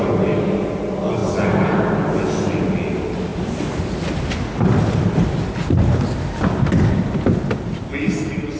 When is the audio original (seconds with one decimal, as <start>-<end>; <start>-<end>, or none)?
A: 0.0-8.6